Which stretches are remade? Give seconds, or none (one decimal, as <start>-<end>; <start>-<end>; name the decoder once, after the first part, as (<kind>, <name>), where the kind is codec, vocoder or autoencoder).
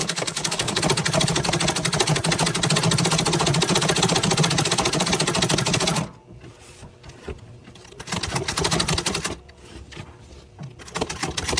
0.0-0.8 (codec, DAC)